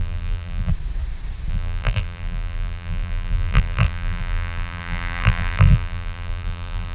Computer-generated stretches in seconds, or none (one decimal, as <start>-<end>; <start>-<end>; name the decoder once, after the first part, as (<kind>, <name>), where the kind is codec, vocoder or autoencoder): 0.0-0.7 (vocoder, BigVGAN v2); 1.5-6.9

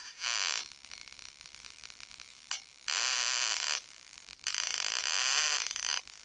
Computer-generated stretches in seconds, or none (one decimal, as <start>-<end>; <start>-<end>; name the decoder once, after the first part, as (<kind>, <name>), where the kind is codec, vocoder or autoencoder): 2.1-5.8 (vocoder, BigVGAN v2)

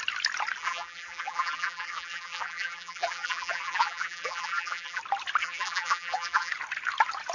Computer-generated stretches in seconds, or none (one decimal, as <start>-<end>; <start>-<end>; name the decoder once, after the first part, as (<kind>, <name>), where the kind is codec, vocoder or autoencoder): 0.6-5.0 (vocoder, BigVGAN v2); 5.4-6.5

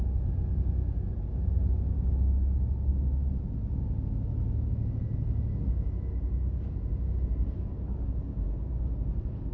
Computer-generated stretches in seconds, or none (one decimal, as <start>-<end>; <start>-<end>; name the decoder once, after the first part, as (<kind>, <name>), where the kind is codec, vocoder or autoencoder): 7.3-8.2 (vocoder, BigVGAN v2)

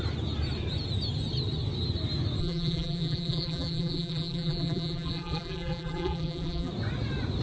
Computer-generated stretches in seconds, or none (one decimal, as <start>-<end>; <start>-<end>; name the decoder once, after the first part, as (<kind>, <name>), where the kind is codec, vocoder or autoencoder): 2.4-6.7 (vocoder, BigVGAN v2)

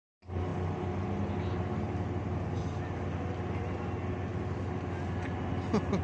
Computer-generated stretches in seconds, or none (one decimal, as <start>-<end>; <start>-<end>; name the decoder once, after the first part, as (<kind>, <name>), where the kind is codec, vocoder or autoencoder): none